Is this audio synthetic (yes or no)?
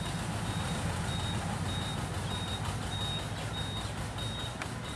no